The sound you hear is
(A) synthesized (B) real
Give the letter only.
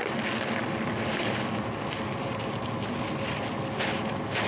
B